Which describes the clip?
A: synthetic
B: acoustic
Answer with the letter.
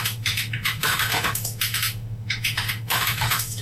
A